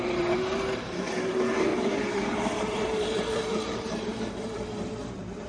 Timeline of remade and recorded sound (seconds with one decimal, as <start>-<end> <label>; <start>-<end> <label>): 0.0-1.7 recorded; 1.7-4.2 remade; 4.2-5.5 recorded